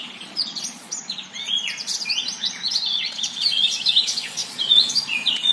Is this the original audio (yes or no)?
no